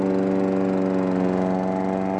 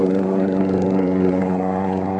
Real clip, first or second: first